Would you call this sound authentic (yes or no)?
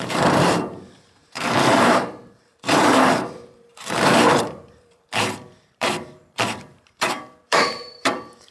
no